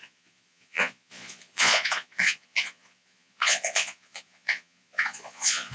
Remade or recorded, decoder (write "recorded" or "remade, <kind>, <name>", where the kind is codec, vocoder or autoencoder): remade, vocoder, Vocos